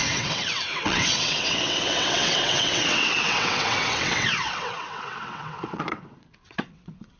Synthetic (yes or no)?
yes